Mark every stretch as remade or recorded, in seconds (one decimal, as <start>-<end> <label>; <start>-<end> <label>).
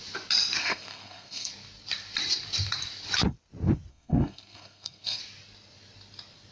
0.0-0.6 recorded; 0.6-1.5 remade; 1.5-3.9 recorded; 3.9-5.2 remade; 5.2-6.5 recorded